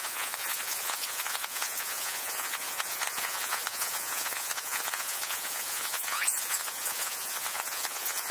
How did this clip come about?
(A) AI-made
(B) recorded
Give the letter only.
A